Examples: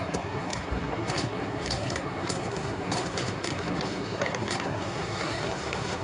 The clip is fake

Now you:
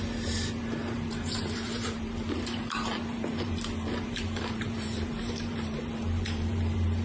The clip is fake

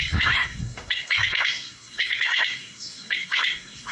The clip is fake